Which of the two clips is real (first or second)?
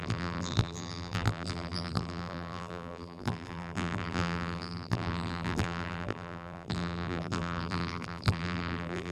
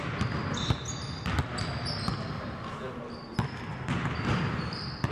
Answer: second